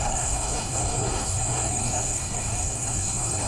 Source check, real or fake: fake